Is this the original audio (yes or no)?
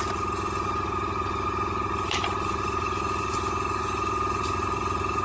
yes